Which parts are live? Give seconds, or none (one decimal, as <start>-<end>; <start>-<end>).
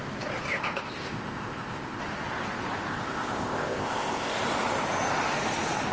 0.0-0.5; 2.0-2.9; 4.4-5.9